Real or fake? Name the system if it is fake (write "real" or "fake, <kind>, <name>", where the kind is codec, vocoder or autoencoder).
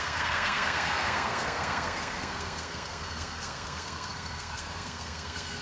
fake, codec, SNAC